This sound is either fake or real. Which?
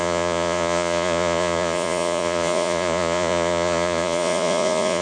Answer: fake